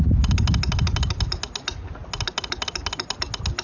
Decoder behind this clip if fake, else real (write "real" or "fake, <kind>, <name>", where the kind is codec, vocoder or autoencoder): real